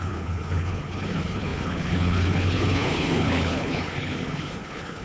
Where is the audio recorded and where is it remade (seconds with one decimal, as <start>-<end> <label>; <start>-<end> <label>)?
0.0-5.0 remade